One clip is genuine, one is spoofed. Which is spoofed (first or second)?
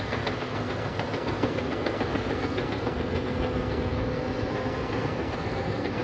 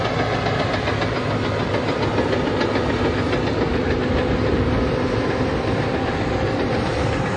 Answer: first